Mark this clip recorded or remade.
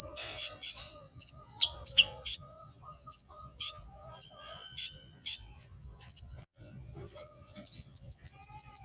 remade